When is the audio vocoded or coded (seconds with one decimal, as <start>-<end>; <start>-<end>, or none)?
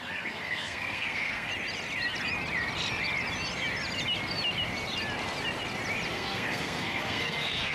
0.0-1.5; 6.1-7.7